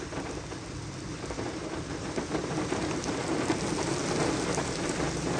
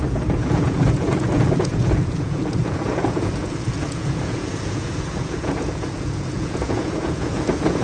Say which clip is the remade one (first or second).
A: second